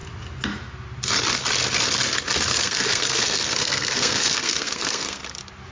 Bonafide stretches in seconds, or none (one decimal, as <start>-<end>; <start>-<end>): 0.0-2.5; 5.2-5.7